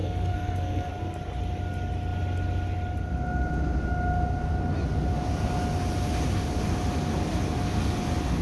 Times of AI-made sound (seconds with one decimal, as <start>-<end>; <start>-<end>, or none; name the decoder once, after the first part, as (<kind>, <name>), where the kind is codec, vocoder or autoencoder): 0.0-0.9 (codec, SNAC)